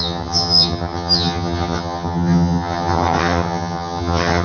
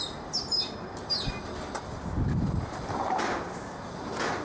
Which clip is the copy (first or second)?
first